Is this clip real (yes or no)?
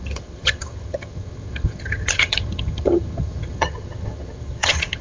no